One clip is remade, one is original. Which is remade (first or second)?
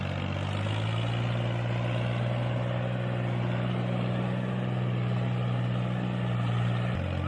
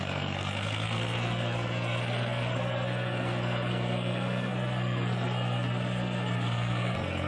second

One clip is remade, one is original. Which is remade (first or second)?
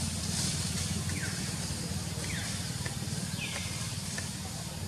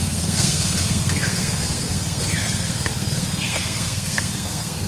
second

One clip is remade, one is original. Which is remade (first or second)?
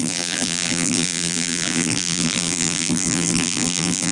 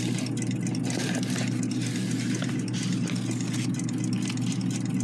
first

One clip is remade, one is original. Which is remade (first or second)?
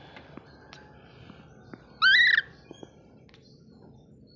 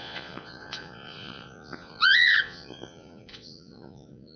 second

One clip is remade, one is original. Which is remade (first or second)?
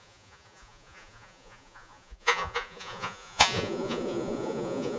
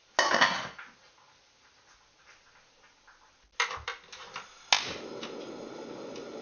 first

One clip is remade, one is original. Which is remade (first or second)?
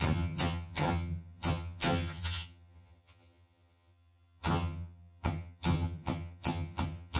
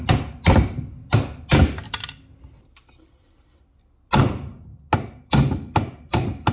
first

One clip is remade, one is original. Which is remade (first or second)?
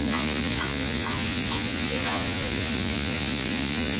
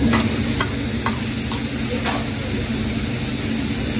first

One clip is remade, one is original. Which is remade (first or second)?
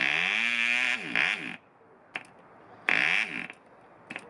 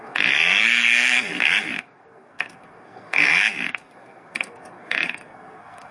second